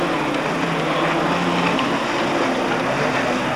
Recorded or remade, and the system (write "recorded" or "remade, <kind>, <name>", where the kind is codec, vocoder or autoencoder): recorded